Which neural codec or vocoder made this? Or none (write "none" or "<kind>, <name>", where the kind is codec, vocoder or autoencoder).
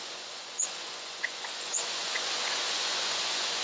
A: vocoder, Vocos